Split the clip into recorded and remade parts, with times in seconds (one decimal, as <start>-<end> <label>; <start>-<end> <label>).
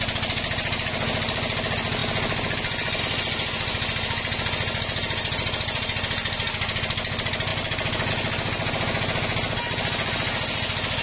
0.0-11.0 recorded